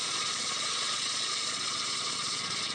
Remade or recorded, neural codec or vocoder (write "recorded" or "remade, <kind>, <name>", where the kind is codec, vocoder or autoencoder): remade, vocoder, Vocos